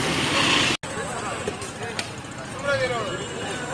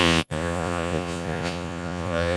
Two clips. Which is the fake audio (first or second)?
second